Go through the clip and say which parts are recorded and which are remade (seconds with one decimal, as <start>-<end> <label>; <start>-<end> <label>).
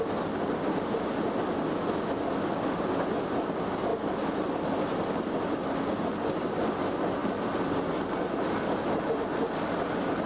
0.0-10.3 recorded